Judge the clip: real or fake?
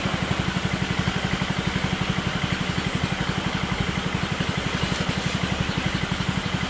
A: real